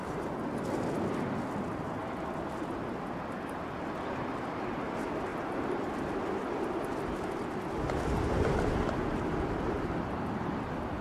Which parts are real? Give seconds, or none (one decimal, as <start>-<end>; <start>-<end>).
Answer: 0.0-11.0

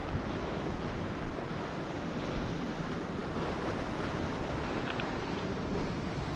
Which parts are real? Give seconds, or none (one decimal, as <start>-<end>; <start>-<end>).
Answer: 1.0-6.4

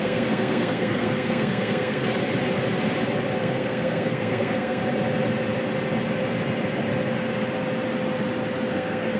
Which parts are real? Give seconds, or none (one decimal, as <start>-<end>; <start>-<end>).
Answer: 2.0-3.4; 4.8-8.7

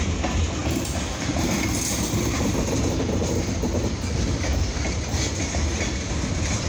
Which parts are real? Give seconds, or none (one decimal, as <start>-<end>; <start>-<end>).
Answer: 0.0-0.6; 3.4-6.7

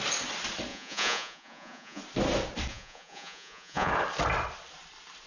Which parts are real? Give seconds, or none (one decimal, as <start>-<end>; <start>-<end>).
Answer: 0.0-0.7; 2.0-2.7; 3.9-5.3

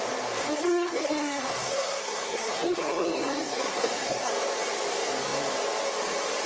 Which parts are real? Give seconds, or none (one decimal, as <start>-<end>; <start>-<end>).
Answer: 0.0-0.4; 4.3-6.5

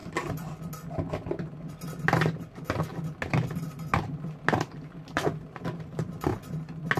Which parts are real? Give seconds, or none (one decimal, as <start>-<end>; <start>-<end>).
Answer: 0.0-7.0

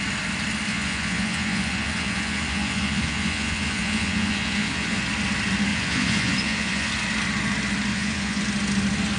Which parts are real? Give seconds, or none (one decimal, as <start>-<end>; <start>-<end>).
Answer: 0.0-0.7; 5.0-5.7; 6.9-7.9; 8.4-9.2